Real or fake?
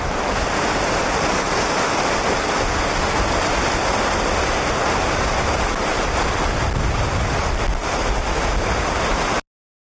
real